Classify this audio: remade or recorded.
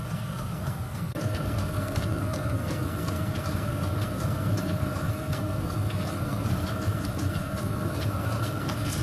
remade